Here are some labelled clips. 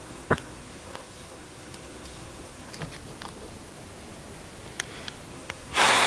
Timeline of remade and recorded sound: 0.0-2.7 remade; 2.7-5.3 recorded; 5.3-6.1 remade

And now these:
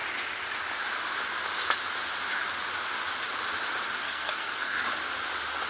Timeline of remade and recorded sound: 0.0-4.0 recorded; 4.0-4.8 remade; 4.8-5.7 recorded

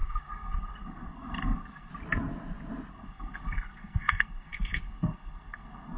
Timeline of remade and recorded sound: 0.0-1.9 remade; 1.9-2.9 recorded; 2.9-6.0 remade

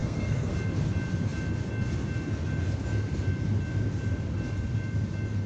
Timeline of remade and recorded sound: 0.0-0.5 remade; 0.5-5.5 recorded